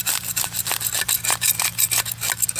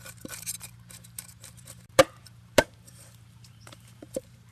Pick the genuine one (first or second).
first